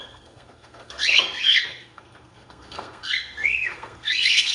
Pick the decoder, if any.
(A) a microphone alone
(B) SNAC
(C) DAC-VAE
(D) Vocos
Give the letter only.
B